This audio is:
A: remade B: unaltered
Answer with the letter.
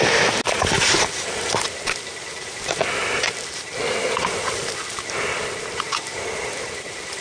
B